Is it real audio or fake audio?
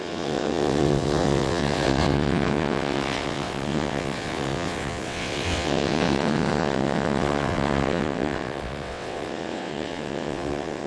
fake